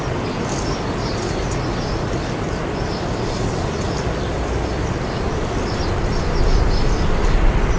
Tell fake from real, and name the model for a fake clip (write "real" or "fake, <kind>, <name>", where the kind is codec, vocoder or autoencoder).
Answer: real